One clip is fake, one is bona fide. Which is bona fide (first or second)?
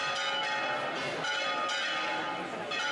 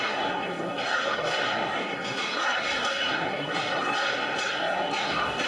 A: first